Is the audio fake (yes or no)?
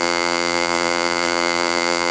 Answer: yes